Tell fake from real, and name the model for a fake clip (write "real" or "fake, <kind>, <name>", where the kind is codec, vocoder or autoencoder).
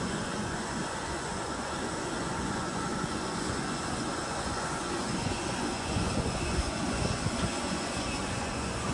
fake, vocoder, Vocos